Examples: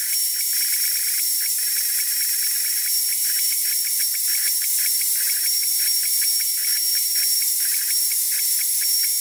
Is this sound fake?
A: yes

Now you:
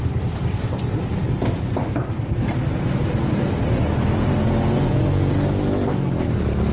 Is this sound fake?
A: yes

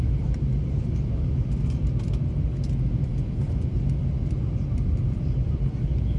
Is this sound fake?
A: yes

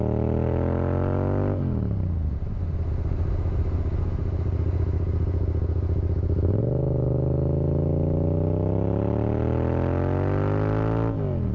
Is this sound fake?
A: no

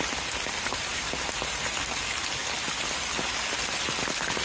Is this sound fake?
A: no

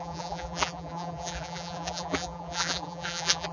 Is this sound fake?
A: yes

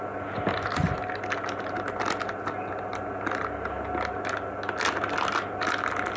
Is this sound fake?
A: no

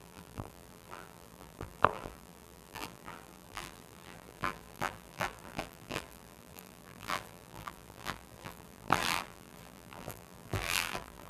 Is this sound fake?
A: yes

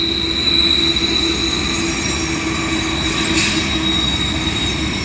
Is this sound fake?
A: no